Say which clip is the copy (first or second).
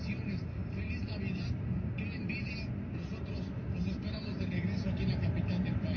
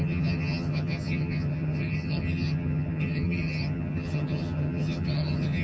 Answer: second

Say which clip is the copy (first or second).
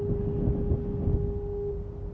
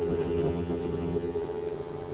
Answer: second